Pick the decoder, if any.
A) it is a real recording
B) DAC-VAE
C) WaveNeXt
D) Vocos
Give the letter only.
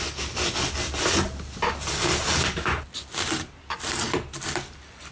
A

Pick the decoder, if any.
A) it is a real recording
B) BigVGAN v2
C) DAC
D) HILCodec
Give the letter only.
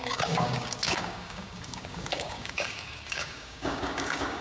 C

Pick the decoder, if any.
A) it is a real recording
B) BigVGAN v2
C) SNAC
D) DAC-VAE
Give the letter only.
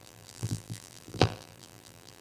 B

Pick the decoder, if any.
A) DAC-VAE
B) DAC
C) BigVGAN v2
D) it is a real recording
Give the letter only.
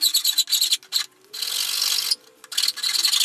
D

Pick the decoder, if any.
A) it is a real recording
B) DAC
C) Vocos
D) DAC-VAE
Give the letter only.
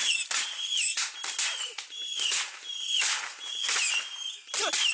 A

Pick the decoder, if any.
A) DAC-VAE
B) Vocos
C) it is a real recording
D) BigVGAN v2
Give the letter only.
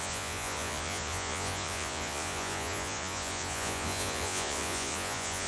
B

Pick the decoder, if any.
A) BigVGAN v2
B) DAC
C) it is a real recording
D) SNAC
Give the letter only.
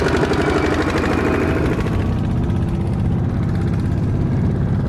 C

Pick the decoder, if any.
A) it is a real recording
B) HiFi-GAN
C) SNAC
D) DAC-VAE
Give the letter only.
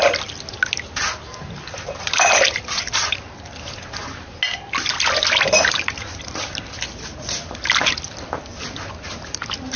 A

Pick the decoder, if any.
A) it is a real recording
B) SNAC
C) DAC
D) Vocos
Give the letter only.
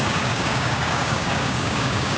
C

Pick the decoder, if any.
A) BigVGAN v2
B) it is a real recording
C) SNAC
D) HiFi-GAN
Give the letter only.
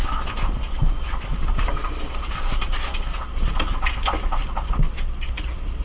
B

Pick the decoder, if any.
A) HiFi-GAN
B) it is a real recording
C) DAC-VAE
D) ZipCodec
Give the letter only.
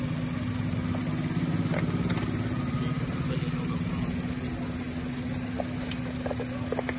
B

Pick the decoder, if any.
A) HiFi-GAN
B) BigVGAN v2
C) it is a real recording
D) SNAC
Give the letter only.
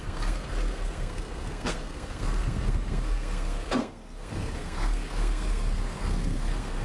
D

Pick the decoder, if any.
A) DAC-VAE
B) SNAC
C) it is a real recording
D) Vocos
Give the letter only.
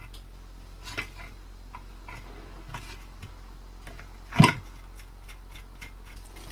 C